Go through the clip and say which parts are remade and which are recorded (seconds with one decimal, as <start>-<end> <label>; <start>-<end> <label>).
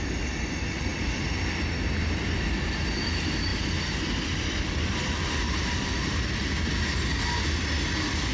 0.0-8.3 recorded